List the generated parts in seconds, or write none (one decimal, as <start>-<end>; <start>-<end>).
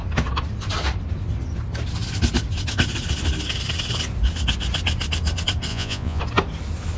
5.7-6.2